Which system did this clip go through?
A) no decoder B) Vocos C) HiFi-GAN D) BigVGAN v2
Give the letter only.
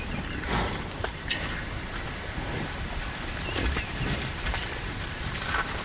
D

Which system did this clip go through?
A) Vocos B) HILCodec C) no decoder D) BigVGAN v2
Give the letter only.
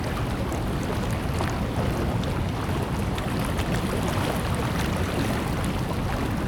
C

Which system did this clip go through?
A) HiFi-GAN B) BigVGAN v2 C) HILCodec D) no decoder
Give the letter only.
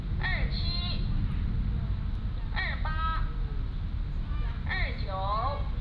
D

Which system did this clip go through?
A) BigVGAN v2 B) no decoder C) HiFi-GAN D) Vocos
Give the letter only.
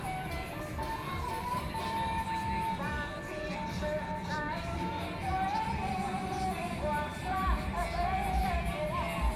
B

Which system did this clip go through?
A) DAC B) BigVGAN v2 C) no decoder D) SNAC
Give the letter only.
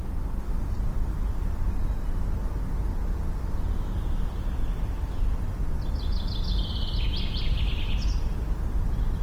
C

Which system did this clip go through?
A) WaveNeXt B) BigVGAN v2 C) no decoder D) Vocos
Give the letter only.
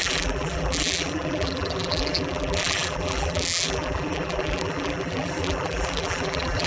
B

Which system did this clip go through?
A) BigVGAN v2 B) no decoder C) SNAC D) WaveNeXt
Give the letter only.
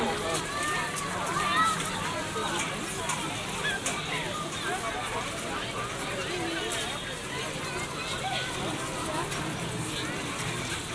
B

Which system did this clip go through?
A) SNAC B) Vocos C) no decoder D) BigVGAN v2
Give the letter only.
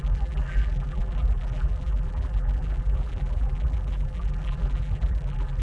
D